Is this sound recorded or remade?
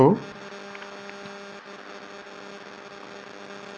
recorded